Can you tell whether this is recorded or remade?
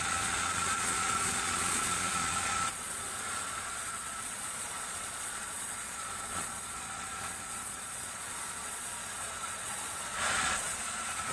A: remade